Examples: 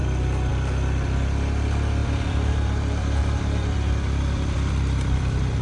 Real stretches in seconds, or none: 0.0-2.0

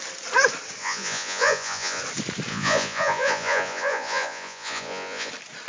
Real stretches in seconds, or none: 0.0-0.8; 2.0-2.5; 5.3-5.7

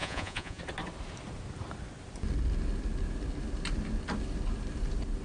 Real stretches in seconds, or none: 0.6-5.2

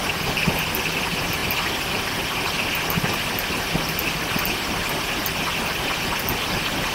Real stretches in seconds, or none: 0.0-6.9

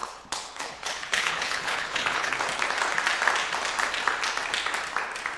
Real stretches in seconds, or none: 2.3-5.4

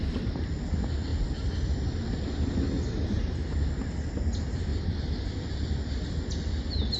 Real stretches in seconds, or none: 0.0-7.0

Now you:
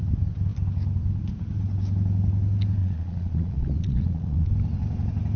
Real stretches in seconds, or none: 0.0-2.8; 4.5-5.4

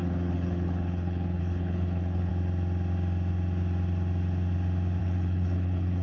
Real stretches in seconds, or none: 2.3-5.0